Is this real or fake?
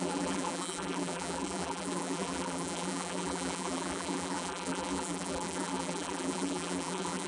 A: fake